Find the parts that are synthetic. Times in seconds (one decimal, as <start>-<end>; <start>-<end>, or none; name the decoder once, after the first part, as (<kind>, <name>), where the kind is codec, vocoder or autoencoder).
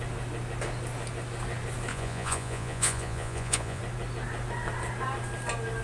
1.9-3.8 (vocoder, Vocos)